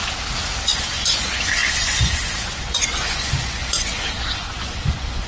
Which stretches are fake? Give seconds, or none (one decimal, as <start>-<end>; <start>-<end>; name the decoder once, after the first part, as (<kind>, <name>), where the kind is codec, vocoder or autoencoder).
0.6-5.3 (vocoder, Vocos)